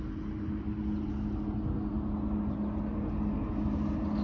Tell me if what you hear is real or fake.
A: real